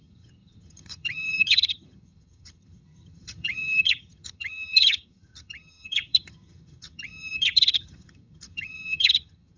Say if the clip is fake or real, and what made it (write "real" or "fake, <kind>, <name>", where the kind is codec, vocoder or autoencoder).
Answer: fake, vocoder, HiFi-GAN